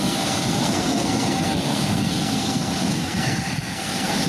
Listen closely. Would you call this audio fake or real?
fake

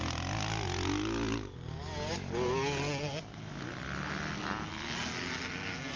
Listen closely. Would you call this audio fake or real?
real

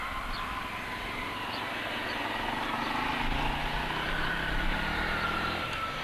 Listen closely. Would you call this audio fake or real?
real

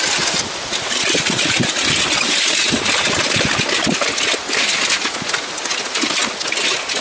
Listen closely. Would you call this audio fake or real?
real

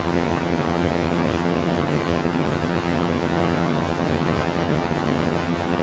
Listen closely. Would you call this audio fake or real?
fake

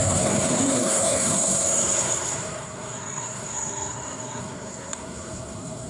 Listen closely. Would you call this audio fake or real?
fake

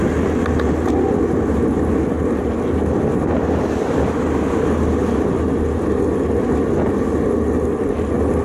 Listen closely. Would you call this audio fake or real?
real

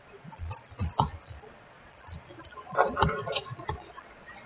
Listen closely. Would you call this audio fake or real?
fake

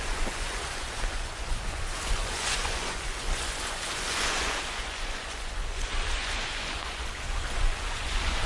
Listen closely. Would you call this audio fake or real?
fake